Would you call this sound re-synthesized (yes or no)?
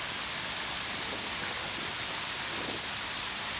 no